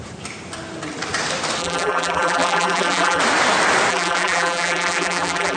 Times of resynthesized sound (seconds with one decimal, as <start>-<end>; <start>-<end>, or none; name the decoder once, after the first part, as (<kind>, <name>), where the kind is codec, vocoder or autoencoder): 1.6-3.2 (vocoder, BigVGAN v2); 3.9-5.6